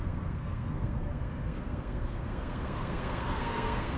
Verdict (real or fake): fake